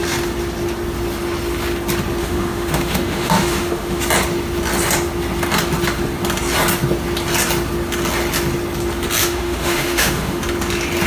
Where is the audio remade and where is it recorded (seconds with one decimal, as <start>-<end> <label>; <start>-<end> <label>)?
0.0-2.2 recorded; 2.2-4.0 remade; 4.0-9.2 recorded; 9.2-10.4 remade; 10.4-11.1 recorded